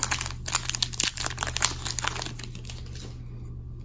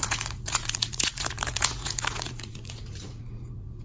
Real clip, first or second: first